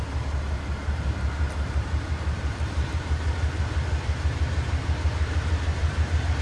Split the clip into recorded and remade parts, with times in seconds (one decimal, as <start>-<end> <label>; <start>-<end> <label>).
0.0-0.8 recorded; 0.8-3.2 remade; 3.2-6.4 recorded